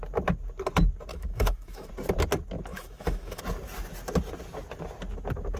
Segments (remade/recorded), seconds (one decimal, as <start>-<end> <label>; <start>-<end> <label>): 0.0-1.1 recorded; 1.1-1.9 remade; 1.9-2.7 recorded; 2.7-3.4 remade; 3.4-5.6 recorded